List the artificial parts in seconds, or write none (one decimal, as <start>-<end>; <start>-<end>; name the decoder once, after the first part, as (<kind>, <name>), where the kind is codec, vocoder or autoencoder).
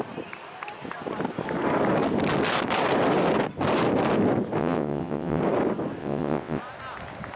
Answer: 4.6-5.4 (vocoder, WaveNeXt); 6.0-6.6